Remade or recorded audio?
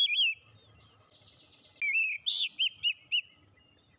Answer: recorded